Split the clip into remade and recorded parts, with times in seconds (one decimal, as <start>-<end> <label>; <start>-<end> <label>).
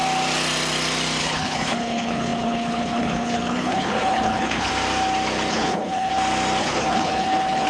0.0-1.2 recorded; 1.2-4.7 remade; 4.7-5.5 recorded; 5.5-6.1 remade; 6.1-6.6 recorded; 6.6-7.7 remade